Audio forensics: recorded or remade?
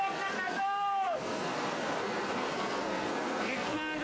remade